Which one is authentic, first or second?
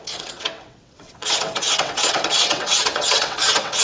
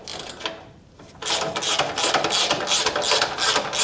second